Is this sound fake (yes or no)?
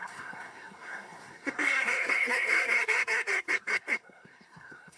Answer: yes